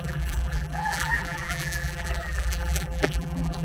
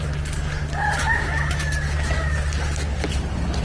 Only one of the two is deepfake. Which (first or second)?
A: first